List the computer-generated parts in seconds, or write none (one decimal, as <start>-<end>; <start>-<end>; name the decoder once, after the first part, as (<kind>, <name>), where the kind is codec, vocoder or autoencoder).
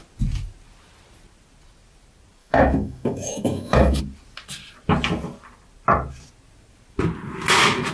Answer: 2.4-4.0 (autoencoder, DAC-VAE)